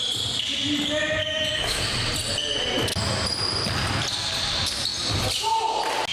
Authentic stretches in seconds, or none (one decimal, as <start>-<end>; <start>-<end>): 0.0-1.2; 1.8-6.1